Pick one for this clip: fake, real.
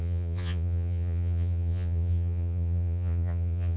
fake